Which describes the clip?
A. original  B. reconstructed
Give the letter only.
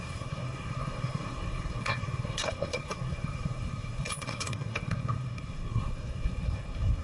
B